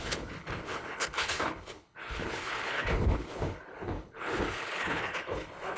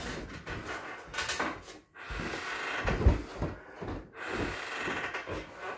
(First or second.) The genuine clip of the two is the second